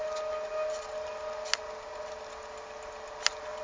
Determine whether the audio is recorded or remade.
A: recorded